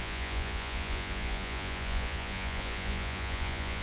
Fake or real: fake